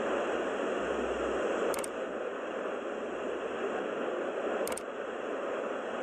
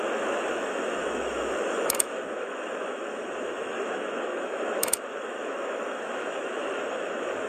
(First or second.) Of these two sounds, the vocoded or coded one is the second